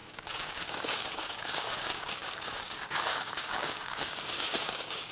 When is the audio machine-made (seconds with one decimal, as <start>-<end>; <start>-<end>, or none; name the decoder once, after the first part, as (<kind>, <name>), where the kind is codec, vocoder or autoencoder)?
0.0-5.1 (codec, DAC)